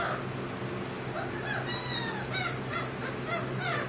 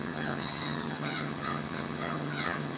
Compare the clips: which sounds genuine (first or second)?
first